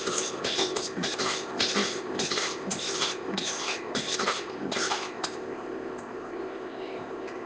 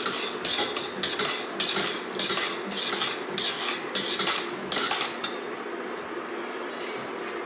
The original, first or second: second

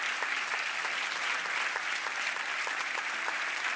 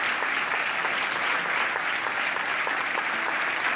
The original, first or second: second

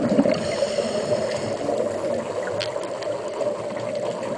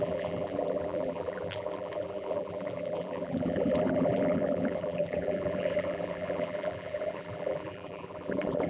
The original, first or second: first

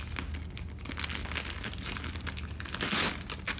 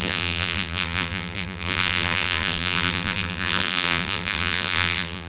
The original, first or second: first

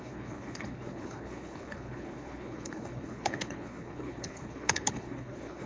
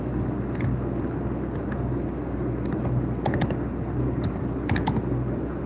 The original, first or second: second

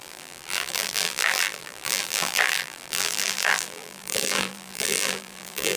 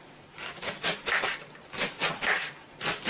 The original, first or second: second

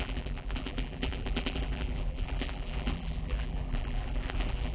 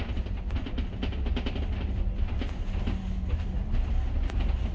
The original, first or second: second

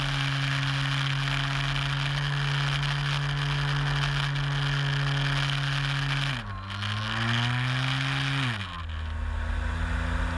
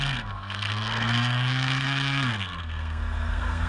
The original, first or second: first